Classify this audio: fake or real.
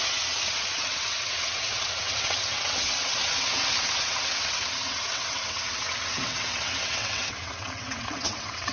fake